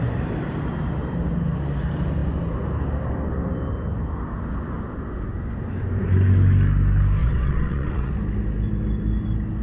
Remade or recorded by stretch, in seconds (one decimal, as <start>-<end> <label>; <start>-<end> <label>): 0.0-7.2 recorded; 7.2-8.1 remade; 8.1-9.6 recorded